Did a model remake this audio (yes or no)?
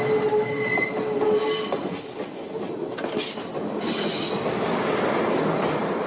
no